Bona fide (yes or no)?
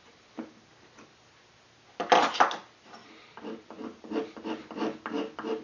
yes